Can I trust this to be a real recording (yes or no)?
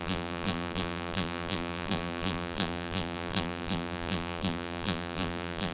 no